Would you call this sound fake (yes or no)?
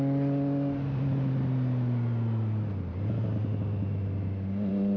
no